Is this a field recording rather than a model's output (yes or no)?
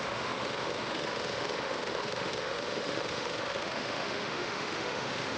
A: no